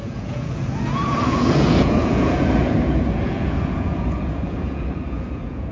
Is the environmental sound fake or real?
fake